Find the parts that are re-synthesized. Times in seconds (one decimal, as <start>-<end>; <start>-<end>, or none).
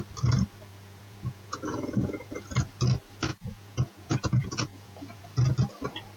0.7-2.3; 3.3-5.2